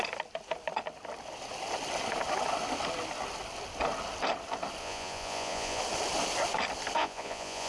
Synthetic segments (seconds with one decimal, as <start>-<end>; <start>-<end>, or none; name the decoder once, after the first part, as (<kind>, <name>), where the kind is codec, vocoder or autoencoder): 4.8-5.8 (vocoder, Vocos); 7.0-7.7